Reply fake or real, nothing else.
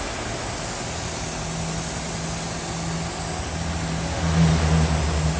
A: real